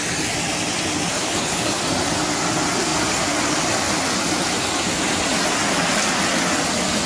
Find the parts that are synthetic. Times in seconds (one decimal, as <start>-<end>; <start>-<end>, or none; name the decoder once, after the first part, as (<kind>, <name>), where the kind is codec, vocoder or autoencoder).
1.1-1.8 (codec, HILCodec)